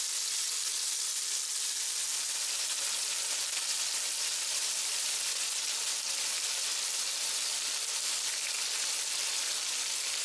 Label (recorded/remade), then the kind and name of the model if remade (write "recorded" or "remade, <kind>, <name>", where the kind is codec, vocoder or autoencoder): recorded